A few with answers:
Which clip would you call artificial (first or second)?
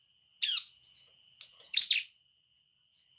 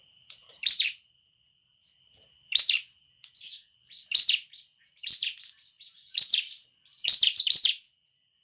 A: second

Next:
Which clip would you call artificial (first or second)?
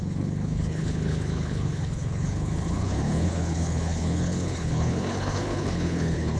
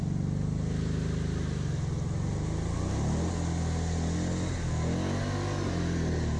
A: first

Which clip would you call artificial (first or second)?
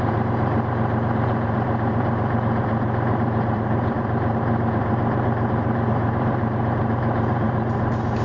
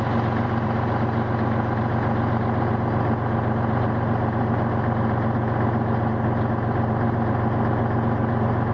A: first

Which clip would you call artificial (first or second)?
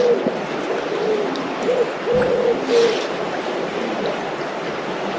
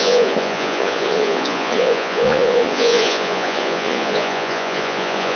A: second